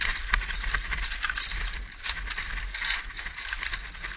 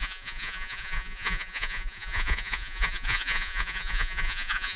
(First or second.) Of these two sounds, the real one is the first